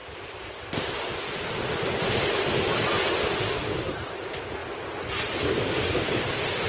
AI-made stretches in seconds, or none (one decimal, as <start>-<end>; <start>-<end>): 0.0-1.6